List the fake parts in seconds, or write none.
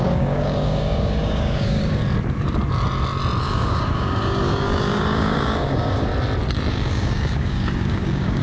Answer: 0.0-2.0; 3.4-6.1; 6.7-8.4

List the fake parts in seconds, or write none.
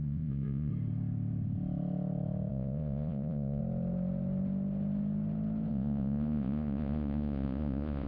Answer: 0.0-0.7; 2.5-3.6; 5.7-8.1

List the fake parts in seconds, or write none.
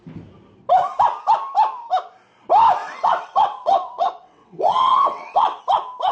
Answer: 2.8-5.6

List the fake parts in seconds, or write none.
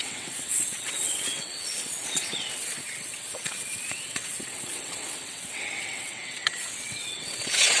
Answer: 0.0-7.8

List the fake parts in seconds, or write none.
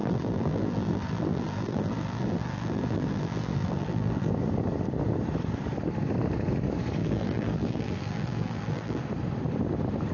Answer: 0.0-4.3; 7.0-9.0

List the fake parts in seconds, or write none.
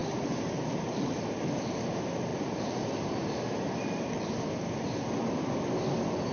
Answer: 0.0-1.6; 2.3-4.3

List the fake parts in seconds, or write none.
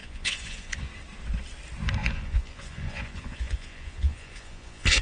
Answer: 0.0-0.9; 2.0-5.0